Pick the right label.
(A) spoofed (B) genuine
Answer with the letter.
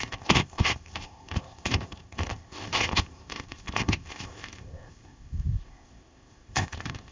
A